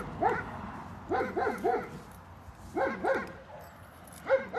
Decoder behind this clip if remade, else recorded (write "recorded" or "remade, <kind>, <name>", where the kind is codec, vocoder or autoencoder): recorded